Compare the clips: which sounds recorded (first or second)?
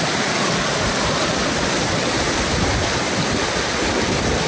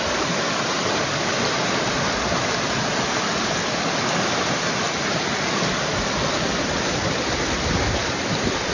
second